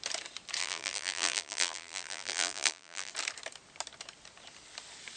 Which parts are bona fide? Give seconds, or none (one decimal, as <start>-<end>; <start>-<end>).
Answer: 0.0-0.6; 3.1-5.2